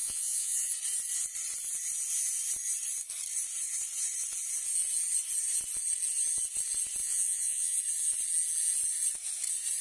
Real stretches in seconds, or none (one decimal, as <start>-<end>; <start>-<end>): 0.7-7.0; 7.8-9.8